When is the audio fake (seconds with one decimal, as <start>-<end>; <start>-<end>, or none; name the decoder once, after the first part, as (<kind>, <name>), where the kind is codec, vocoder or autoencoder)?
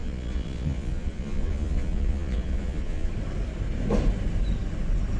0.0-3.1 (vocoder, Vocos)